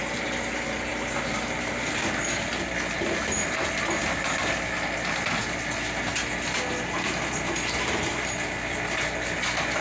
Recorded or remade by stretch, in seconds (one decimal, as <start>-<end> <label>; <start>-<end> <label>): 0.0-9.8 recorded